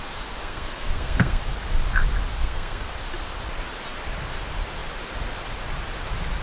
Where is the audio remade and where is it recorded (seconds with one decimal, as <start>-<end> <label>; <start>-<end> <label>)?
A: 0.0-0.4 recorded; 0.4-1.4 remade; 1.4-2.3 recorded; 2.3-2.9 remade; 2.9-6.4 recorded